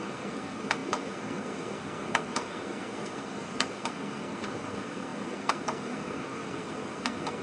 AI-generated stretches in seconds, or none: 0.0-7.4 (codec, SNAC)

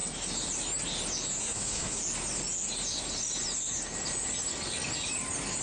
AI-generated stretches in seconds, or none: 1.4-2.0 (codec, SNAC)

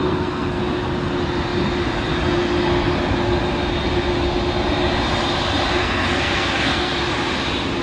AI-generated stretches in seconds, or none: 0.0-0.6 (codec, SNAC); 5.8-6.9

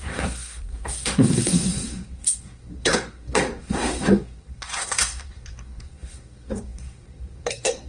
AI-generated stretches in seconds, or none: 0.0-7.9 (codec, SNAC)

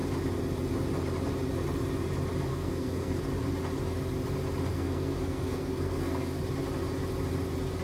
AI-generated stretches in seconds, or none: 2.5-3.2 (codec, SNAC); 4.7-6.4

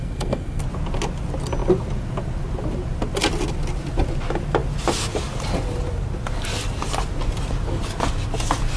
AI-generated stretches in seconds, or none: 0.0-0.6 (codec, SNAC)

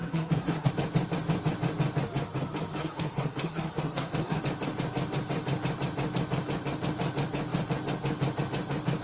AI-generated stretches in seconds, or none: 0.0-0.7 (codec, SNAC); 2.8-4.4

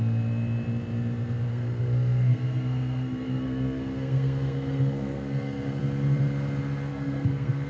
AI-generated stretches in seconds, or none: 1.5-5.8 (codec, SNAC); 6.9-7.7